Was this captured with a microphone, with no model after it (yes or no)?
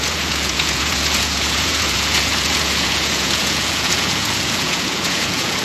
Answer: no